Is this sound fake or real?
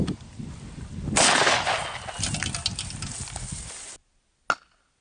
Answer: real